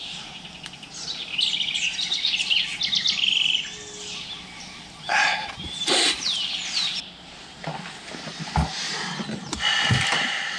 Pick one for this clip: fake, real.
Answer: real